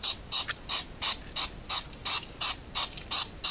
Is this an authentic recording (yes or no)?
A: yes